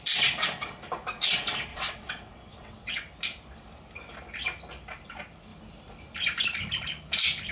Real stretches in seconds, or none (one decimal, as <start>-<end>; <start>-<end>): 0.0-1.7; 2.9-7.5

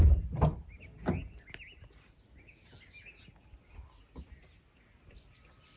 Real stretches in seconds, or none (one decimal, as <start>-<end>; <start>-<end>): 0.0-5.8

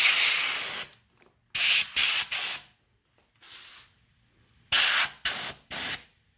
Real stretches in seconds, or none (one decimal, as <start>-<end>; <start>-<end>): 0.0-6.4

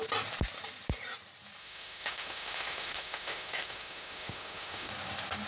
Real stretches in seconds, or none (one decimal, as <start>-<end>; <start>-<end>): 0.0-1.6; 4.9-5.5

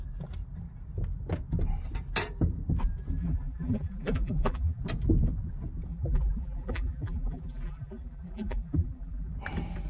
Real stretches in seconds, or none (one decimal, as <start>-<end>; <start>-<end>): 0.0-3.2; 4.8-5.9; 9.3-9.9

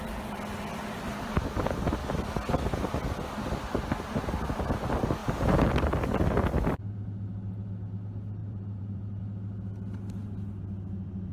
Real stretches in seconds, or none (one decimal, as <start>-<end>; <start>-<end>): 0.0-8.4; 9.2-11.3

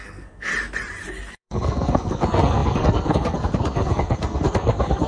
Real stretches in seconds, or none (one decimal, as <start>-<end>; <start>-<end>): 0.5-1.3